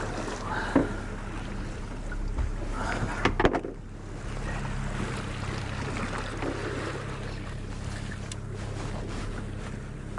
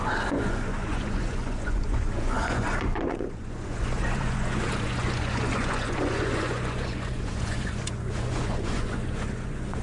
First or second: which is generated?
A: second